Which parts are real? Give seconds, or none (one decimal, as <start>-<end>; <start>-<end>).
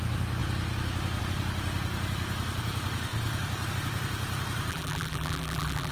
0.0-4.7